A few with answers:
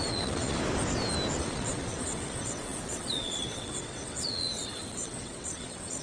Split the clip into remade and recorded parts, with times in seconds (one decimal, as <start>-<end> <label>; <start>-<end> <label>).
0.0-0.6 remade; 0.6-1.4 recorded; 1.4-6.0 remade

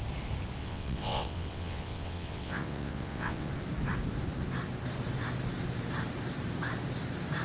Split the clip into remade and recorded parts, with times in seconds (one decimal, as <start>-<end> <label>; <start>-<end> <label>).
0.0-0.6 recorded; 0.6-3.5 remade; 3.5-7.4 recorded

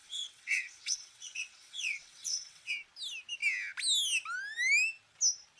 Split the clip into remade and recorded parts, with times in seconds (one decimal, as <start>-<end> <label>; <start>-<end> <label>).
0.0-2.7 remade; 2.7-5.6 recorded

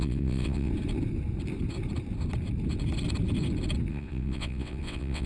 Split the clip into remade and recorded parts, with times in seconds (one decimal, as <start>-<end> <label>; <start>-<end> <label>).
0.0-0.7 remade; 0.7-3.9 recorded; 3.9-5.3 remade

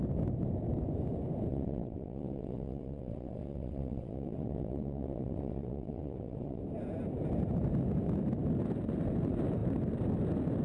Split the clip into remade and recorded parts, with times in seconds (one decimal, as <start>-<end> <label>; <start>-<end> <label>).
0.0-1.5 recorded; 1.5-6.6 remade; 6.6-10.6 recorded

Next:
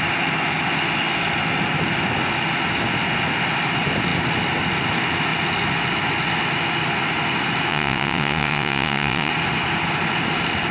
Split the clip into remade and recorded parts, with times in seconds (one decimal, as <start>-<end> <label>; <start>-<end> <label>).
0.0-7.7 recorded; 7.7-9.3 remade; 9.3-10.7 recorded